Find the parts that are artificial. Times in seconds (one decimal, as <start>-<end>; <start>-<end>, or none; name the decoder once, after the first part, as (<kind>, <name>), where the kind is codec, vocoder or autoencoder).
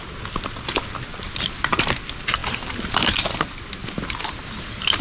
1.1-1.9 (vocoder, BigVGAN v2); 2.4-3.6